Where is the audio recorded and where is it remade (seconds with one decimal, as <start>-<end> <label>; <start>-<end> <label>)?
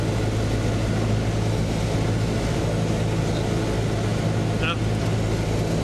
0.0-5.8 recorded